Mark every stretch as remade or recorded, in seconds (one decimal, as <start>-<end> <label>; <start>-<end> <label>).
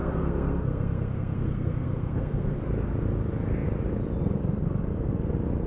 0.0-2.6 remade; 2.6-5.7 recorded